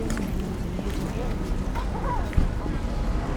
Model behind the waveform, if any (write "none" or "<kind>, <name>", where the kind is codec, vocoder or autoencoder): vocoder, BigVGAN v2